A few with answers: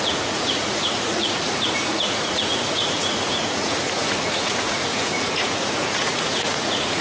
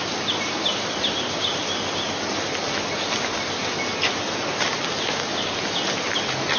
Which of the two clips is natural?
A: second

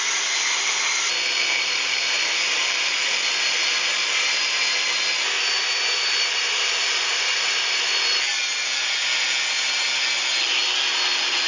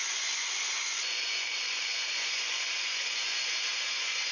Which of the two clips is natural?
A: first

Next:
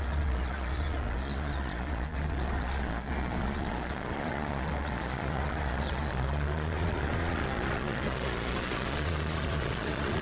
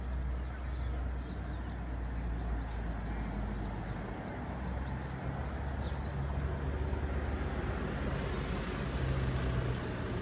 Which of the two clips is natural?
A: second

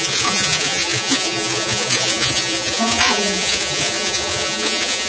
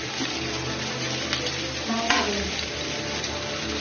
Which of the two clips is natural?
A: second